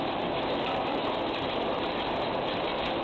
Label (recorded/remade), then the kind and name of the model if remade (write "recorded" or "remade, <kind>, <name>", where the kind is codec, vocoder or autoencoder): recorded